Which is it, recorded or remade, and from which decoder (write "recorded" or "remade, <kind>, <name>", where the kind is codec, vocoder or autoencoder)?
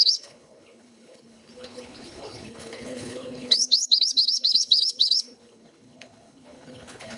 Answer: remade, codec, HILCodec